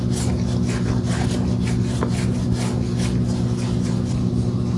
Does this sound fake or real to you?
real